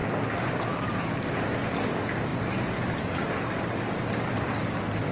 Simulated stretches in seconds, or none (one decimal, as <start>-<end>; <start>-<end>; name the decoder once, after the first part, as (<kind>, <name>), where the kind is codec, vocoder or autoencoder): 2.3-3.4 (vocoder, BigVGAN v2)